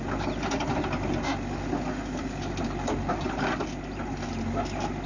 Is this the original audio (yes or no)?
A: yes